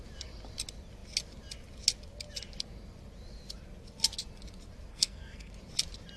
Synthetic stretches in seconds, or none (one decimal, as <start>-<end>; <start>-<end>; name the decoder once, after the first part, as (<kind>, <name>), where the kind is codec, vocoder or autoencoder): 4.9-5.5 (codec, SNAC)